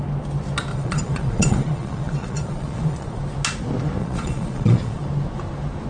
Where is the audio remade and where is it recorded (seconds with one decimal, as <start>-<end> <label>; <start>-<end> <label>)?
0.0-0.7 recorded; 0.7-3.2 remade; 3.2-4.0 recorded; 4.0-5.0 remade; 5.0-5.9 recorded